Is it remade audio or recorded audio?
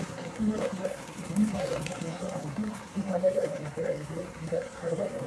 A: remade